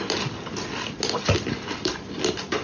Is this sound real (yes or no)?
yes